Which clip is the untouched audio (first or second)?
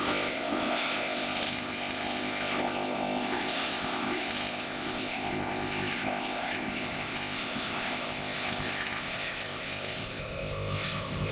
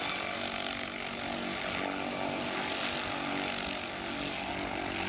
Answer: second